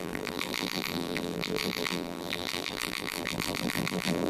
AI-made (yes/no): yes